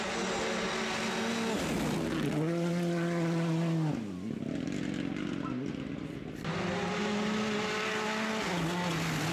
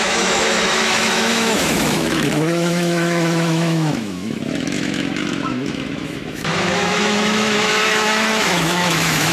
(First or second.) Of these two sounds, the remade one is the second